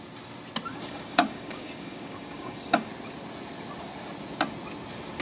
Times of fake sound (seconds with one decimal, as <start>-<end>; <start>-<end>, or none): 0.7-2.9